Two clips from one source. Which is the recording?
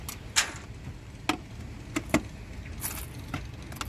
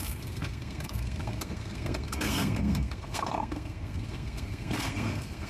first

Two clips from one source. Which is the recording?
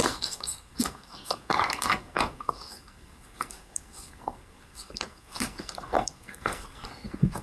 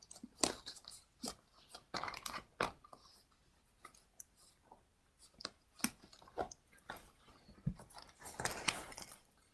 second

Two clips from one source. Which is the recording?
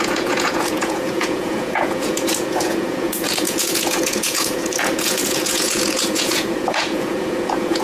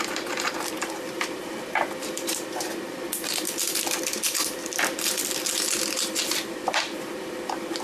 second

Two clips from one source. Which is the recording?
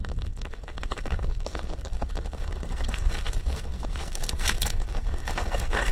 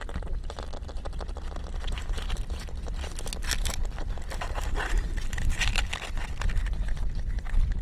second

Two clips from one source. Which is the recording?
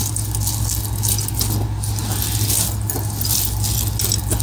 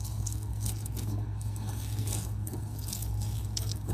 first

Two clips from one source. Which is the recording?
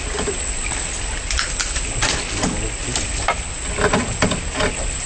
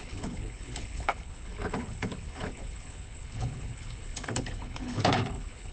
first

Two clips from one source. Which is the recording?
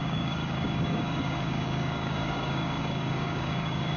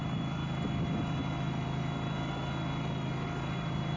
second